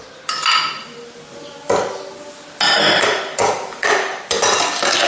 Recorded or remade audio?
recorded